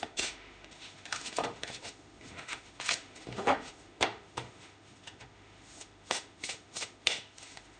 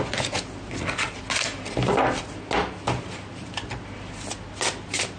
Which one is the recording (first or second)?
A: second